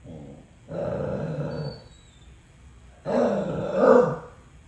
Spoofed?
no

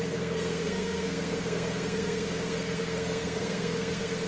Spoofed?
yes